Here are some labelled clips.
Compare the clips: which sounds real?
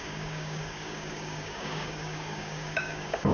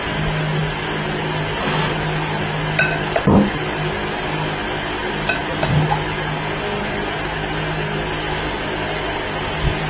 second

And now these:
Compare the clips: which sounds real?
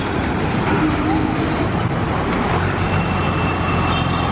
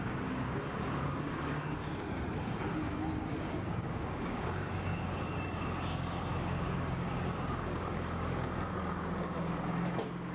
first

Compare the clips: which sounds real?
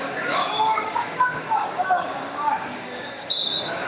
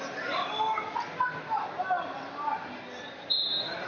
second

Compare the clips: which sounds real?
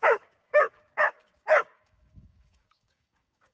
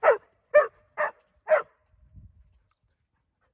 second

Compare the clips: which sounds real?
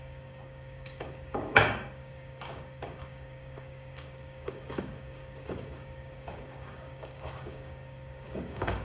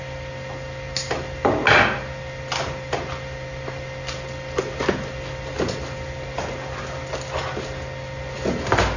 second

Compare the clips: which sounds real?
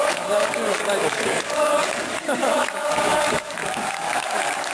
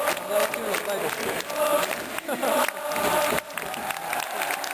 second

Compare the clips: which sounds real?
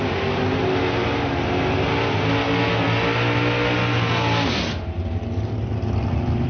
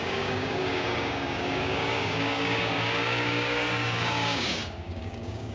first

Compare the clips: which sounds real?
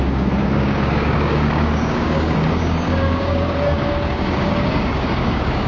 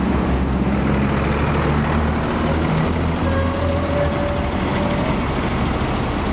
second